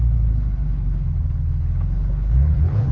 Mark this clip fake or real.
fake